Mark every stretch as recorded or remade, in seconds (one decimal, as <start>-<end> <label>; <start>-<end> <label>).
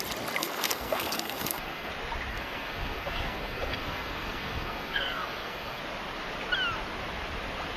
0.0-0.4 recorded; 0.4-1.9 remade; 1.9-2.3 recorded; 2.3-5.8 remade; 5.8-7.8 recorded